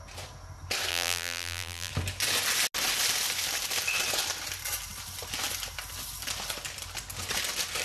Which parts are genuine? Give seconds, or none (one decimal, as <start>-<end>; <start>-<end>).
0.0-0.9; 1.9-7.8